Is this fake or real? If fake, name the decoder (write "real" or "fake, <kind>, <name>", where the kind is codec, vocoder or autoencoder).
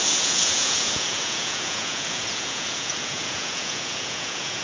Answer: fake, vocoder, Vocos